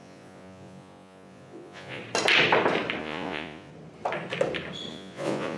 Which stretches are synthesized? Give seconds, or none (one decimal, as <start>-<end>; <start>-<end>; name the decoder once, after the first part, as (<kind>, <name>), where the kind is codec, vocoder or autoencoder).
0.0-2.0 (vocoder, Vocos); 3.0-3.7; 4.9-5.6